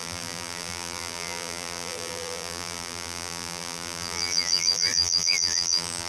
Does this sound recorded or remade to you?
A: remade